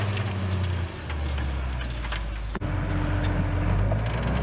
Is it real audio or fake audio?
real